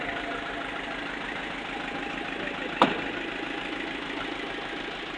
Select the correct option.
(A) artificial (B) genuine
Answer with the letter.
B